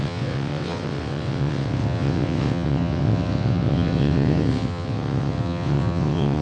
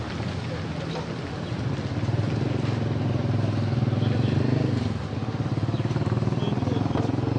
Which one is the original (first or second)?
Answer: second